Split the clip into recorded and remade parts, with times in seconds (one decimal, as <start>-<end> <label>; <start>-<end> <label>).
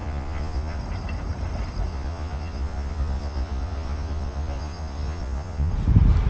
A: 0.0-0.8 remade; 0.8-1.9 recorded; 1.9-5.7 remade; 5.7-6.3 recorded